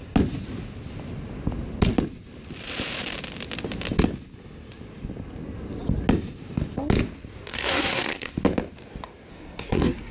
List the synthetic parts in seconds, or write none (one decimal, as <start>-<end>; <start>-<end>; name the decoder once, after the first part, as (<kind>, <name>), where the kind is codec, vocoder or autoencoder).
7.5-8.3 (codec, SNAC); 9.3-10.1